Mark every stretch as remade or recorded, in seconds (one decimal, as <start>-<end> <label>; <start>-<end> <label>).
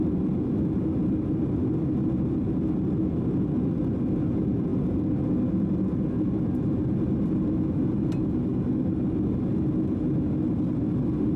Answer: 0.0-11.4 recorded